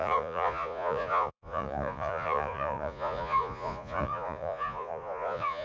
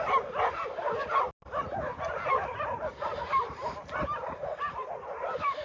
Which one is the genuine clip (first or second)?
second